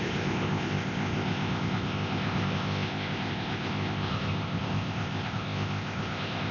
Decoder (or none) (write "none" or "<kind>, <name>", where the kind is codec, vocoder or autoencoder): codec, ZipCodec